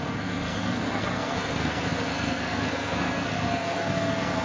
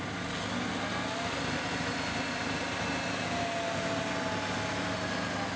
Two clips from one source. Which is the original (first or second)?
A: second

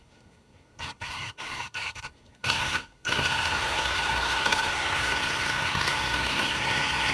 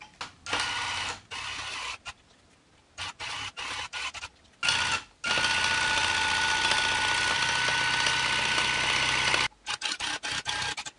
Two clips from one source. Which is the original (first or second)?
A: second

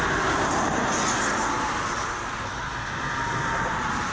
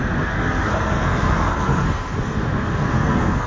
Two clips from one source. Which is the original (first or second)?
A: first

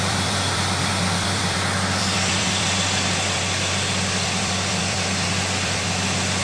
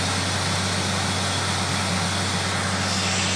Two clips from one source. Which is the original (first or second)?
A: second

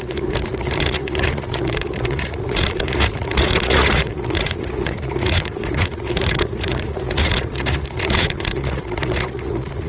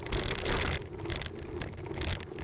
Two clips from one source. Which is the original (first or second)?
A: second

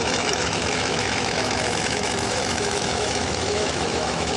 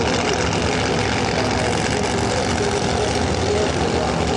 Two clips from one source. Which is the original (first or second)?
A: second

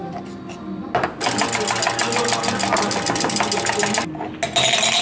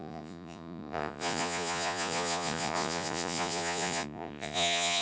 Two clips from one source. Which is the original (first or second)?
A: first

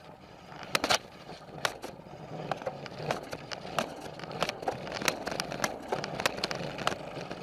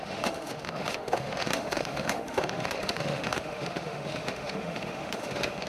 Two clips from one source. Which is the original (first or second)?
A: first